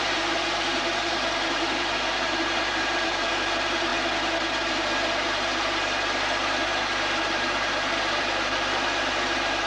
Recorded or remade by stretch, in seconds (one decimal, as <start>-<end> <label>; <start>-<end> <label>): 0.0-3.9 remade; 3.9-4.7 recorded; 4.7-9.7 remade